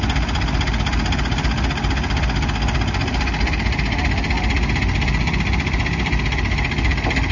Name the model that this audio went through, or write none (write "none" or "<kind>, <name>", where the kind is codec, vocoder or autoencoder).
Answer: none